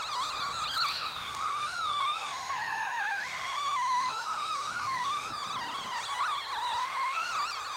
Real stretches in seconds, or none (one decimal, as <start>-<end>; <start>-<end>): 0.0-0.9; 5.3-6.8; 7.3-7.8